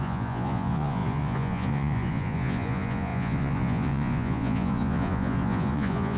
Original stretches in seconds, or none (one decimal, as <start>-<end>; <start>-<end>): none